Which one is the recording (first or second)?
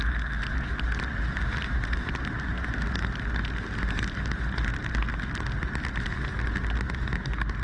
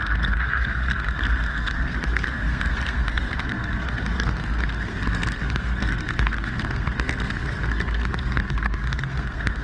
first